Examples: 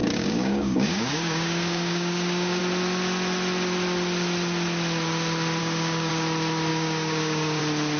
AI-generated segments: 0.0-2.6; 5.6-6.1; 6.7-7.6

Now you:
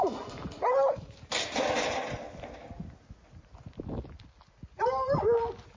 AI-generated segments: none

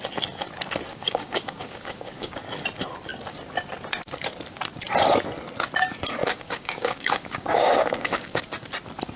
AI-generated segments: 0.9-2.4; 6.2-8.4

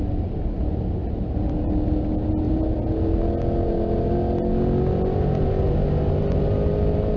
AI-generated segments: none

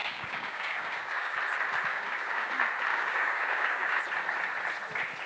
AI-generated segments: 0.0-1.4; 1.9-2.5; 2.9-4.0

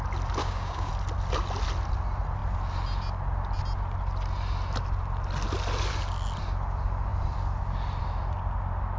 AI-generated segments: 0.4-0.9

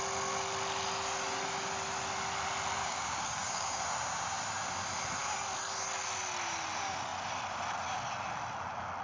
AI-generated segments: 2.8-3.8

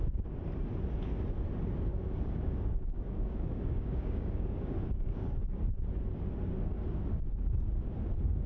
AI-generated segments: 1.9-5.6